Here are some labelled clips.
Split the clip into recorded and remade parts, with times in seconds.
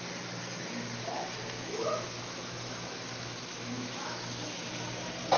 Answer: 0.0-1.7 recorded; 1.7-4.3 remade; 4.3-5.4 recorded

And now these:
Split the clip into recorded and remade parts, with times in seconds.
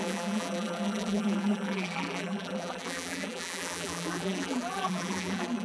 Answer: 0.0-5.6 remade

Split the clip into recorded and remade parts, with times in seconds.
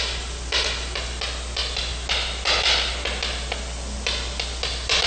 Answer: 0.0-5.1 recorded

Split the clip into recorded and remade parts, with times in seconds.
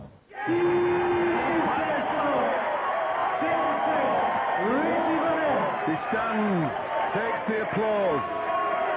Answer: 0.0-1.2 recorded; 1.2-2.2 remade; 2.2-9.0 recorded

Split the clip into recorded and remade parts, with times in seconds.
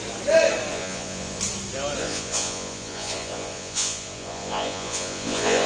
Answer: 0.0-0.7 recorded; 0.7-1.4 remade; 1.4-2.0 recorded; 2.0-5.7 remade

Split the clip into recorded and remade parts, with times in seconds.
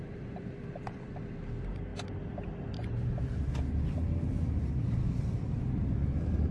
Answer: 0.0-1.9 remade; 1.9-4.7 recorded; 4.7-6.5 remade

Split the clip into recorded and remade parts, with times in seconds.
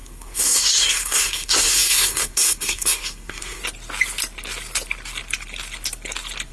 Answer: 0.0-3.6 remade; 3.6-6.5 recorded